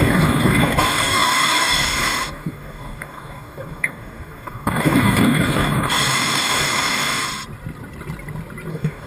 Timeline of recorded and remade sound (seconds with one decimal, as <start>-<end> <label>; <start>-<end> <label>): 0.0-7.3 remade; 7.3-8.7 recorded; 8.7-9.1 remade